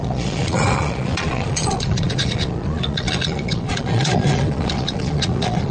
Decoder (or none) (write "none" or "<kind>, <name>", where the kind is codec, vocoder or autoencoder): vocoder, Vocos